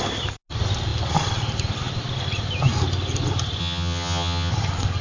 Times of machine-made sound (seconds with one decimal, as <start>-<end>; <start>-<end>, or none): 3.6-4.5